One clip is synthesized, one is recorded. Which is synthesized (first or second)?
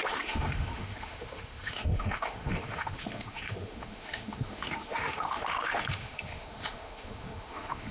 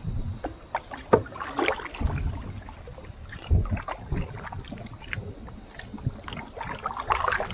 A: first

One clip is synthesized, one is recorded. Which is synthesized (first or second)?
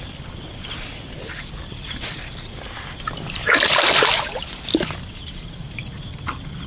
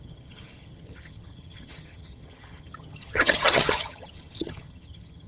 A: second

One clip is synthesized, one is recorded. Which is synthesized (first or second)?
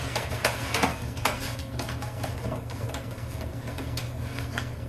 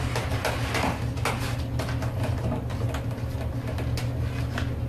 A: first